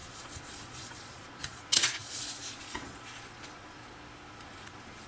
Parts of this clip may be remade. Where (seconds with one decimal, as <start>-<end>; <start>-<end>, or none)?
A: 0.0-3.8; 4.3-5.1